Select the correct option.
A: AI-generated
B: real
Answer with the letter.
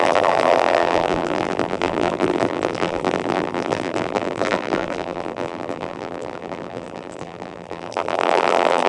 A